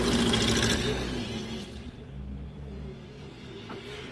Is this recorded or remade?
recorded